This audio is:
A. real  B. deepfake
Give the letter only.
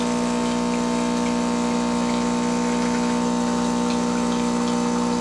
A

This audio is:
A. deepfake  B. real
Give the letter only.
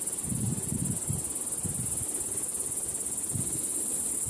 B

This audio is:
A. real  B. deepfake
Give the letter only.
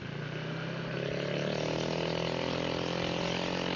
A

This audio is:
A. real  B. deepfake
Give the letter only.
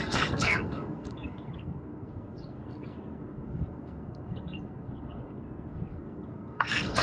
B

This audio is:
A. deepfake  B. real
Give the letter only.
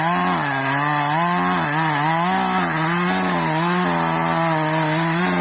B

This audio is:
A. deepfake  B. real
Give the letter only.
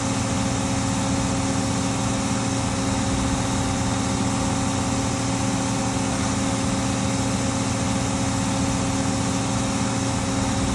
B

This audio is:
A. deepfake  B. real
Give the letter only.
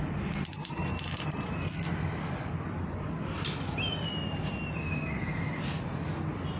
B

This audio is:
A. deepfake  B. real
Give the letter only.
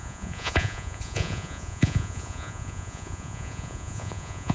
A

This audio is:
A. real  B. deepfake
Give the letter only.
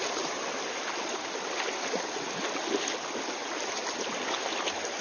A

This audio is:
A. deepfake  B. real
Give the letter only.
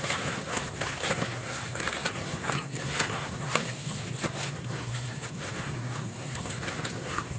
A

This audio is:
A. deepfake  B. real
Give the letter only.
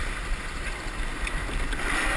B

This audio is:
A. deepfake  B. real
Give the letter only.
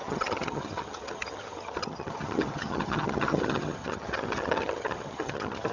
A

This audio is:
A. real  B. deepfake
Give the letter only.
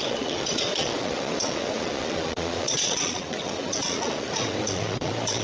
B